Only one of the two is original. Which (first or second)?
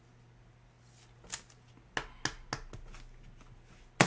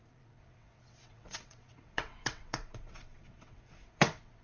first